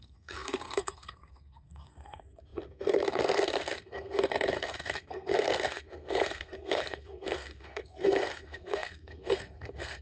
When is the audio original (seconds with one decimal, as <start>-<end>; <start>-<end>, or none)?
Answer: none